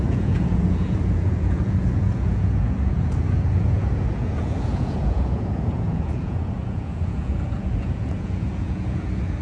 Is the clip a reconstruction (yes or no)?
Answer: yes